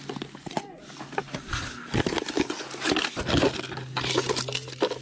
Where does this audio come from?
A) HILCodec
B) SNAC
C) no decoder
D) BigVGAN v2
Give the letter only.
C